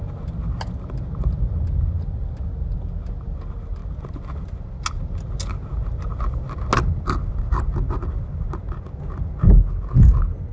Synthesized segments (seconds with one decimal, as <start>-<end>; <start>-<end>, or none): none

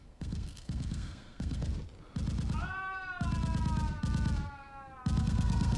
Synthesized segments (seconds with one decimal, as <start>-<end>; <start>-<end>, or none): 0.0-1.7; 5.2-5.8

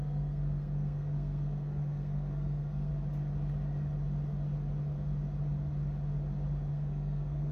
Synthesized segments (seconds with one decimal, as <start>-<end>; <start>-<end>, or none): 0.0-2.9; 6.7-7.5

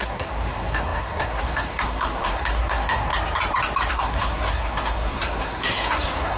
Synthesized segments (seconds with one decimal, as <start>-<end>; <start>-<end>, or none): 0.0-3.1; 3.9-6.4

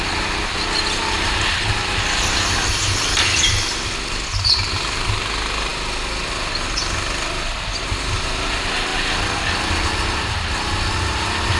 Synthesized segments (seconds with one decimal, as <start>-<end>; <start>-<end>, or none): none

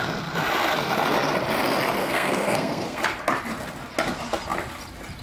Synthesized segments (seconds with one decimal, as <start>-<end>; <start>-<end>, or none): 2.0-3.0

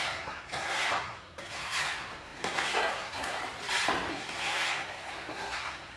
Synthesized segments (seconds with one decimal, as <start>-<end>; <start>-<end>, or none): 0.0-3.4; 4.1-6.0

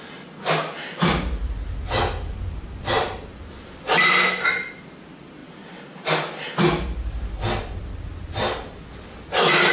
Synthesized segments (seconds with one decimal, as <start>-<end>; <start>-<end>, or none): none